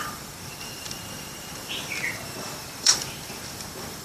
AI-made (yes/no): yes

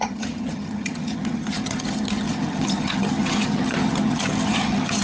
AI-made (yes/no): yes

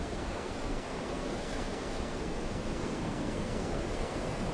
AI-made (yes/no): yes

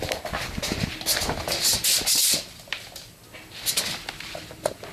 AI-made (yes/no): no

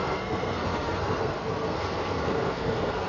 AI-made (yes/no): yes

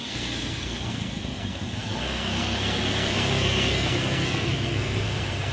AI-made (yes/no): yes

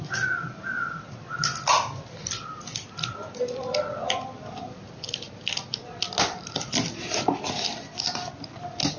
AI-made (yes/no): no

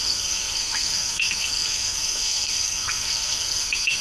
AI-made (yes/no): yes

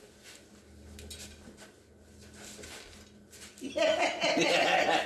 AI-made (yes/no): no